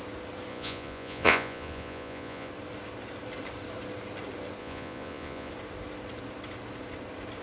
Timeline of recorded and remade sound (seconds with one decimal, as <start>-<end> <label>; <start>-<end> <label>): 0.0-0.5 recorded; 0.5-2.5 remade; 2.5-4.6 recorded; 4.6-5.5 remade; 5.5-7.4 recorded